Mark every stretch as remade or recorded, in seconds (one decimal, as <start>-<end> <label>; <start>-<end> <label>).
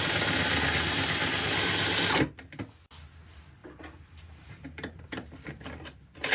0.0-3.6 recorded; 3.6-5.0 remade; 5.0-6.3 recorded